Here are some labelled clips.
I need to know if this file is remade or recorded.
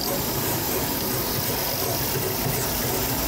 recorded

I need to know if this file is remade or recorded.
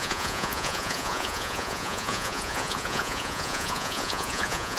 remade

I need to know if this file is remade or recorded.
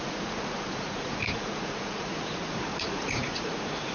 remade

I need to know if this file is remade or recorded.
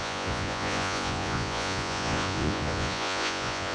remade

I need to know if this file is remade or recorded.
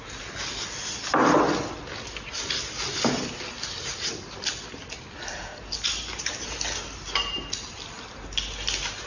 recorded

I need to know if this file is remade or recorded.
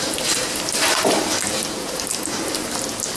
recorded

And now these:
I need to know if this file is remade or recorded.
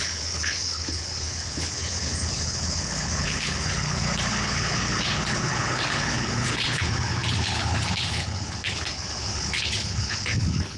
remade